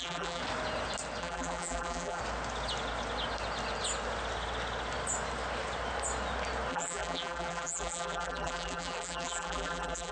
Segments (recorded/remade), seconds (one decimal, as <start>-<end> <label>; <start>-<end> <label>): 0.0-0.4 remade; 0.4-1.2 recorded; 1.2-2.2 remade; 2.2-6.7 recorded; 6.7-10.1 remade